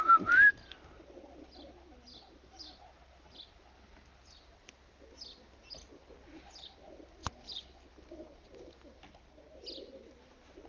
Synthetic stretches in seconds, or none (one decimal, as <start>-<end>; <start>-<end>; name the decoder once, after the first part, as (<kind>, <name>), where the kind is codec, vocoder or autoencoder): none